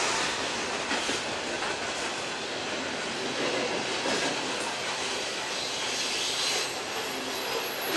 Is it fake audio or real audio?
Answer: real